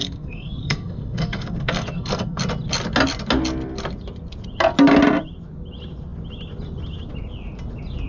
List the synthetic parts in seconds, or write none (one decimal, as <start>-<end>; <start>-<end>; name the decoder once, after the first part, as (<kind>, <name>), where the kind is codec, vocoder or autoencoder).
0.0-2.4 (codec, SNAC)